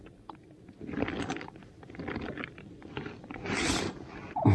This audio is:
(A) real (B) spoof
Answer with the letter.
A